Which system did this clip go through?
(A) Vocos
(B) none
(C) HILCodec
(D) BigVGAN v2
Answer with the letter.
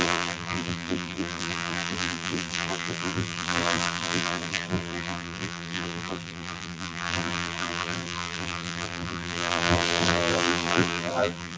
D